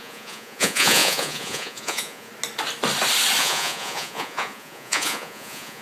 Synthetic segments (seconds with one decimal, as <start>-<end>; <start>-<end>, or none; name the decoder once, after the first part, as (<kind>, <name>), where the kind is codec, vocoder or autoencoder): 0.0-2.3 (vocoder, Vocos); 3.4-5.8